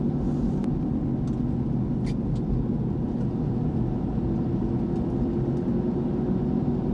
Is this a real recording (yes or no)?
yes